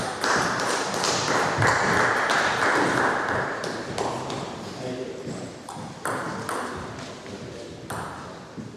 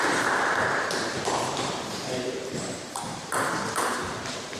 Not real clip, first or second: second